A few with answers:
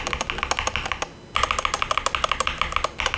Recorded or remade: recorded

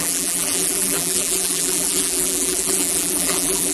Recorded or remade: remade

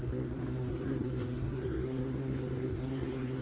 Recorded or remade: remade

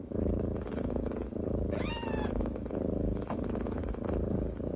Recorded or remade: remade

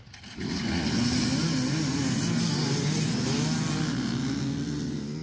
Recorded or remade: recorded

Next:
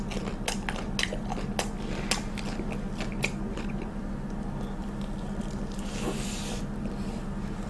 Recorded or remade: recorded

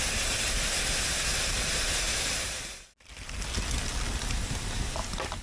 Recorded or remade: recorded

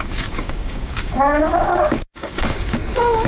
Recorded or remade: remade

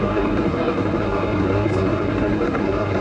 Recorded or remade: remade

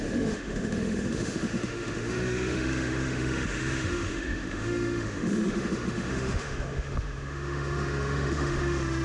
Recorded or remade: remade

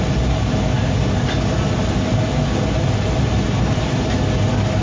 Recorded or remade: recorded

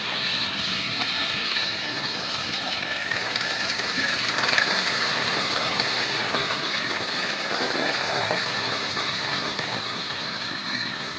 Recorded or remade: remade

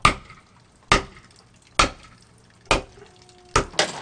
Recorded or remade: recorded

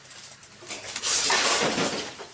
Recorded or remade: remade